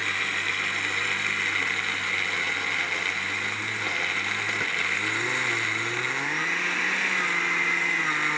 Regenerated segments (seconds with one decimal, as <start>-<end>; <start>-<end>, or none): none